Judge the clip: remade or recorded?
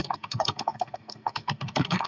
remade